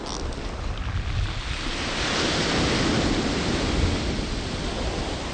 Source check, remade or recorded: recorded